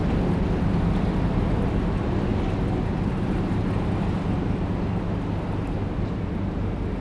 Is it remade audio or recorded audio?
recorded